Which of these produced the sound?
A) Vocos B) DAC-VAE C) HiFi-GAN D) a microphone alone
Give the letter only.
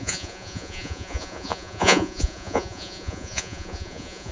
A